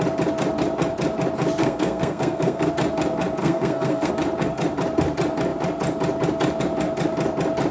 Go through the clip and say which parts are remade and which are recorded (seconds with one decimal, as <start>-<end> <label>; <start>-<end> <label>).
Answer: 0.0-1.6 recorded; 1.6-2.7 remade; 2.7-3.4 recorded; 3.4-4.1 remade; 4.1-7.7 recorded